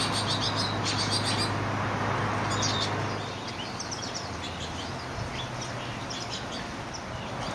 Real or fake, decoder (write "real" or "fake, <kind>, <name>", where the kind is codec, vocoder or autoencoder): real